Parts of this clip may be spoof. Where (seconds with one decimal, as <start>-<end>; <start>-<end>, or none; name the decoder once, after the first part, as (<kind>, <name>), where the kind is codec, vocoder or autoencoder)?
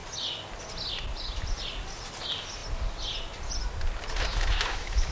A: 4.3-5.1 (autoencoder, DAC-VAE)